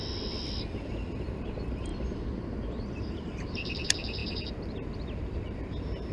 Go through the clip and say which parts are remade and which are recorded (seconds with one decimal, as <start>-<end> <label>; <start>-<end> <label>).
0.0-0.9 recorded; 0.9-1.9 remade; 1.9-2.9 recorded; 2.9-6.1 remade